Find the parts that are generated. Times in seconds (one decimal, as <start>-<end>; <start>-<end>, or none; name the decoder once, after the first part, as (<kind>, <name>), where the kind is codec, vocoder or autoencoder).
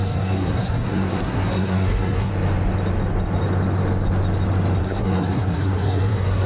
0.0-2.3 (codec, SNAC); 4.8-6.5